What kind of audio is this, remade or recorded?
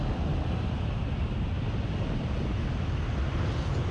recorded